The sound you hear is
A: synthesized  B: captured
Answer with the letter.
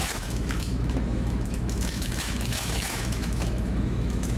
A